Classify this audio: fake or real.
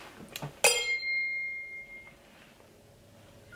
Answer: real